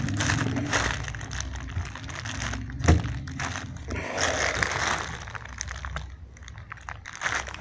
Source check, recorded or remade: recorded